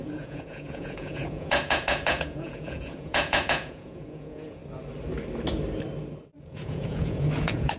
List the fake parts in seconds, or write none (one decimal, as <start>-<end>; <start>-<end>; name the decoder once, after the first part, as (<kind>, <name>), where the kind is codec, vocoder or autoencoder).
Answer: 0.0-4.6 (vocoder, Vocos); 6.4-7.8